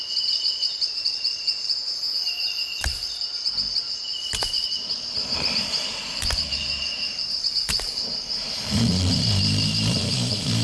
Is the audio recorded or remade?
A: remade